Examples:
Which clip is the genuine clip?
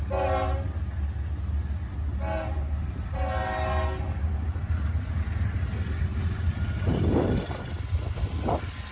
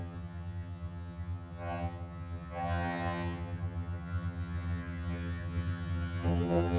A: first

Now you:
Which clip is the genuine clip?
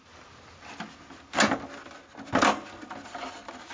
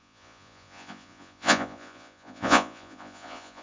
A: first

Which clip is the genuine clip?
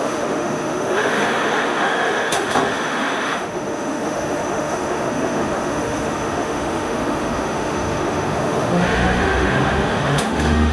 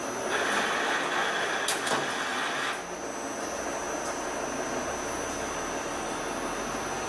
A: second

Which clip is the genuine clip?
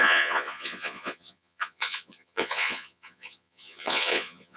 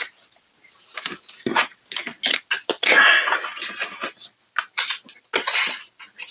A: second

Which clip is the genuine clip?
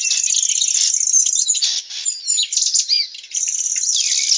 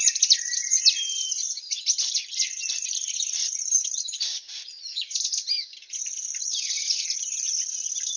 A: first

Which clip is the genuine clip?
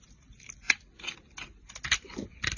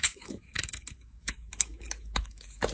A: first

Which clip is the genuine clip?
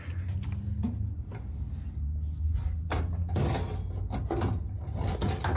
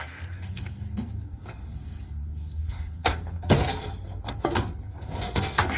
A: first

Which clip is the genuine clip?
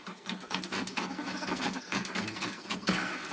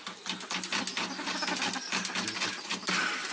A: second